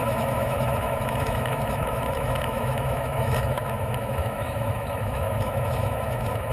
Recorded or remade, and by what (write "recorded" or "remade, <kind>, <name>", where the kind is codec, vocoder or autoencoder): remade, autoencoder, DAC-VAE